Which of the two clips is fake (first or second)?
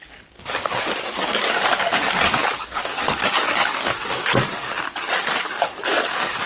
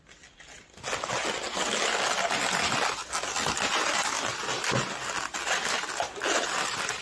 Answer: first